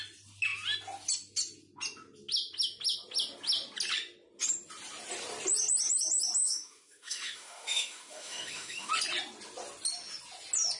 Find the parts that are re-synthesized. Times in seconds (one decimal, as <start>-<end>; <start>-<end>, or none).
6.4-8.9